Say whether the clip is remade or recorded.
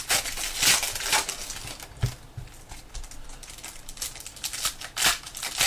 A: recorded